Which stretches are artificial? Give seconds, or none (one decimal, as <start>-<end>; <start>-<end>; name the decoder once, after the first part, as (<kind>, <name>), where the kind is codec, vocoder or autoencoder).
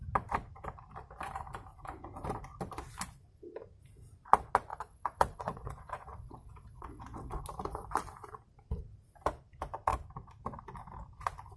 4.7-7.4 (vocoder, WaveNeXt)